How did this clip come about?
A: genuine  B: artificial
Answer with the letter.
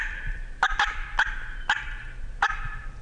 B